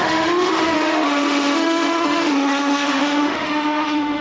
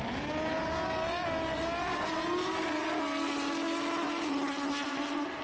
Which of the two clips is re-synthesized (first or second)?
first